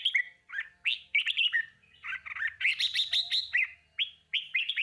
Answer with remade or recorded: recorded